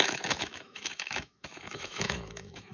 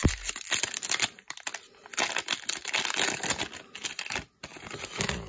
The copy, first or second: first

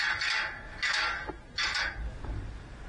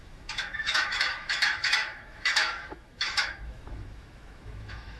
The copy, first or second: second